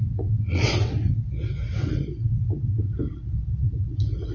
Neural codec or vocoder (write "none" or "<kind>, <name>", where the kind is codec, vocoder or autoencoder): vocoder, WaveNeXt